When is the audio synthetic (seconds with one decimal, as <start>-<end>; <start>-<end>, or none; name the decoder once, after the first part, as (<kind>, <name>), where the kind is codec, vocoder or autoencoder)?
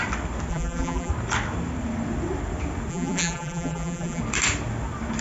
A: 0.5-1.1 (vocoder, BigVGAN v2); 2.9-4.2